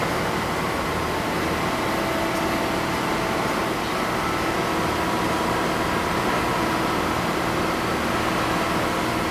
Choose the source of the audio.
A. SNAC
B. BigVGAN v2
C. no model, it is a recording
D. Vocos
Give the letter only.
C